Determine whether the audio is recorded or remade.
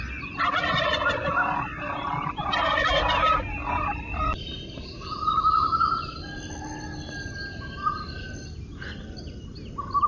recorded